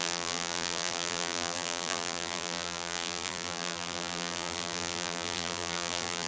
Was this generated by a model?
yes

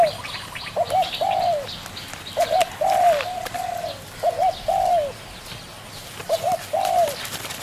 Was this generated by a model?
no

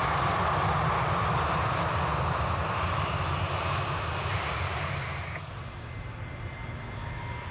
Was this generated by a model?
no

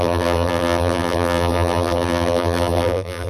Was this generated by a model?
yes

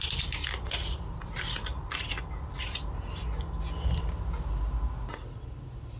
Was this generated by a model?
no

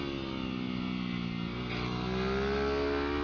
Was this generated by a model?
no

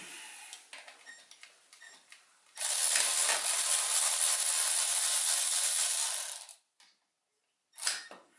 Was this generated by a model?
no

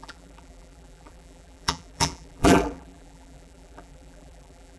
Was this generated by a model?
yes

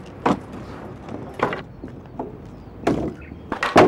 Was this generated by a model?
no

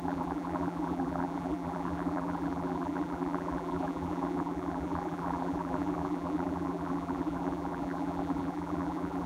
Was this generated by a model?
yes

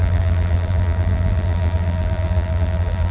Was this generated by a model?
yes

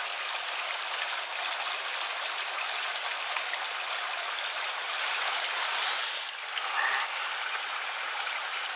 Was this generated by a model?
no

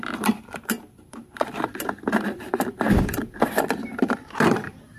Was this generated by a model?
yes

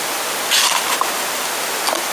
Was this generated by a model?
no